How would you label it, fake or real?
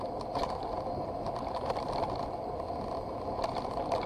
real